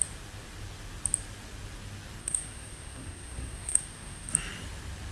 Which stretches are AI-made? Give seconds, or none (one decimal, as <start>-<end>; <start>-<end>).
2.2-4.3